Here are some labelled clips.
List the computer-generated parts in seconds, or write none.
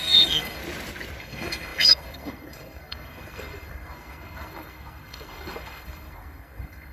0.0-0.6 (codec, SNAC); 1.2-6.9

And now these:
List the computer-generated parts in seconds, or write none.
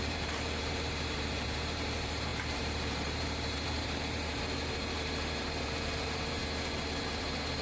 0.0-6.4 (vocoder, BigVGAN v2); 7.0-7.6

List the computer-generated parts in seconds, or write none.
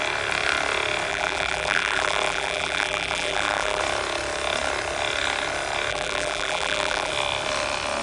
1.1-3.8 (vocoder, BigVGAN v2); 5.9-7.1